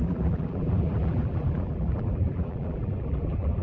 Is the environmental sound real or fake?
fake